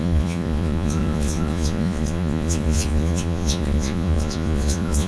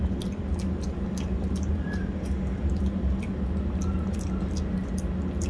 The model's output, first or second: first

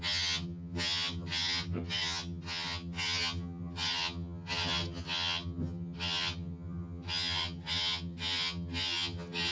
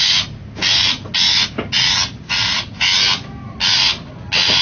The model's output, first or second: first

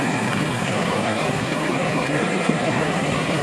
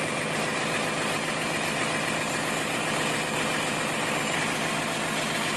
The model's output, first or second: first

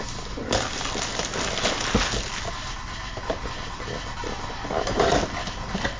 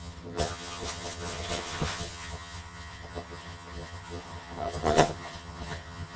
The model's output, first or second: second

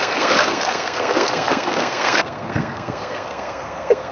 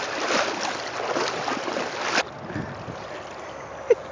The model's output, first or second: first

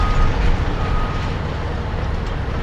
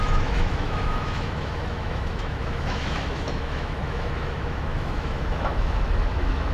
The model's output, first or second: second